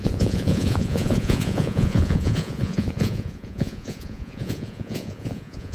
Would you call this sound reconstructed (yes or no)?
yes